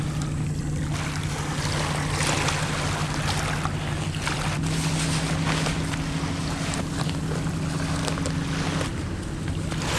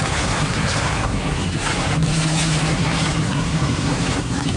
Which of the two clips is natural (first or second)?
first